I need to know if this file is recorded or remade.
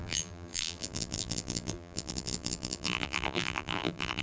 remade